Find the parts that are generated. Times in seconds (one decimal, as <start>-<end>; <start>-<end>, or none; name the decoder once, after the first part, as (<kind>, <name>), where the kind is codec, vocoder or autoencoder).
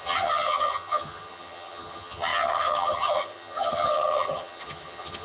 0.0-5.2 (vocoder, HiFi-GAN)